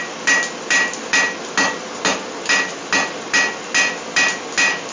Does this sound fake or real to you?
real